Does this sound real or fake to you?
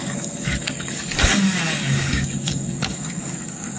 fake